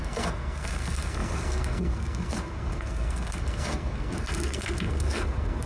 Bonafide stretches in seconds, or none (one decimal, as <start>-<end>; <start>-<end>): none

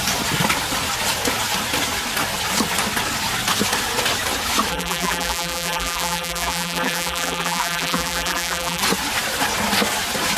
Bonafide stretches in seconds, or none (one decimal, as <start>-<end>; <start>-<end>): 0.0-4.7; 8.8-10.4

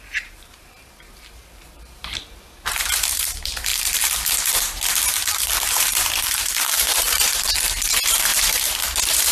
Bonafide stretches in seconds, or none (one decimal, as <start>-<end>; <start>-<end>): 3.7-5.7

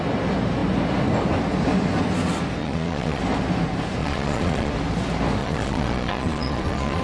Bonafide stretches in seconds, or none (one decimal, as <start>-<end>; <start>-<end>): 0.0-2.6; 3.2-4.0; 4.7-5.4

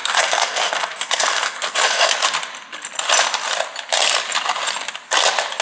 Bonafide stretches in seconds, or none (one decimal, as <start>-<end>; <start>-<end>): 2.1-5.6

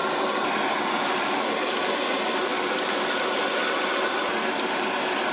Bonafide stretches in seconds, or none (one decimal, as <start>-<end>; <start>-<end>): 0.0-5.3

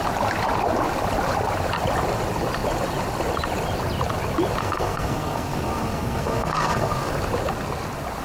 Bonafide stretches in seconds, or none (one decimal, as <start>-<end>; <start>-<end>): 0.0-4.6; 7.1-8.2

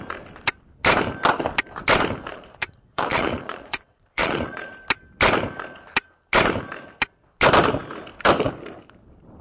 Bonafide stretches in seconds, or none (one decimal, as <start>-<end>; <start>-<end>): 0.0-2.3; 4.7-9.4